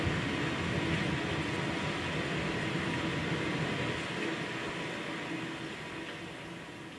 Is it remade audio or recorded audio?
recorded